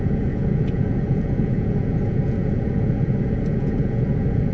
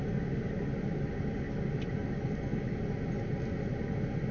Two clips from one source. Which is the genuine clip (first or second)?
second